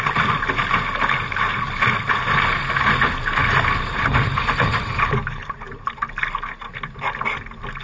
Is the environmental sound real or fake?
real